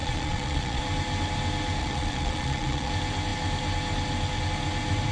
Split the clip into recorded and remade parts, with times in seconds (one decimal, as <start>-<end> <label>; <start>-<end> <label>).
0.0-0.8 remade; 0.8-1.8 recorded; 1.8-2.9 remade; 2.9-5.1 recorded